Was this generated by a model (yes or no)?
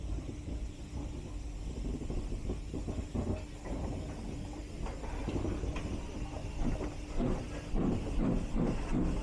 no